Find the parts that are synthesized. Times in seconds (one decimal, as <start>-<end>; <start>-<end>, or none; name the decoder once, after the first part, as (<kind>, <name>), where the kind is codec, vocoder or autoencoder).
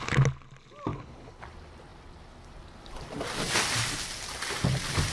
0.9-1.4 (codec, HILCodec)